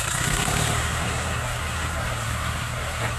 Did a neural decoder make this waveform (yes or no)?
yes